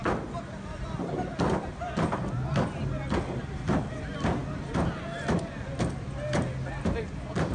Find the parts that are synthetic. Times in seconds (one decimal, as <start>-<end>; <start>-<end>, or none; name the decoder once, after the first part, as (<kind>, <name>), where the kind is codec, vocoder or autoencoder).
none